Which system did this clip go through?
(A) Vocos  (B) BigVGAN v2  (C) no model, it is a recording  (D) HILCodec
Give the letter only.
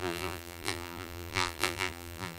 B